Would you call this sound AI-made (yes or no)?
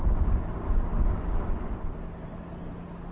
no